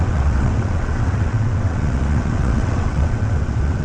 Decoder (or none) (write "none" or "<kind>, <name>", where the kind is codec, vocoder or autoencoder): vocoder, WaveNeXt